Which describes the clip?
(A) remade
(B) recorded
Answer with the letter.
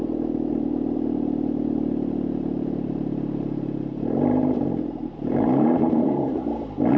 A